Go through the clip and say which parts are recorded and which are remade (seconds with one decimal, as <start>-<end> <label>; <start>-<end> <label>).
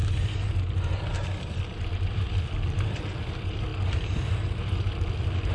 0.0-3.7 remade; 3.7-5.5 recorded